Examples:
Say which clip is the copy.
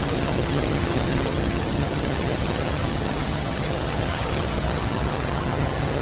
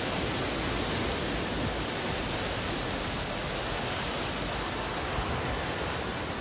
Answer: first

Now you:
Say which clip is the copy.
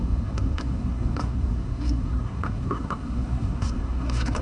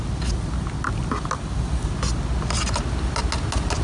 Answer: first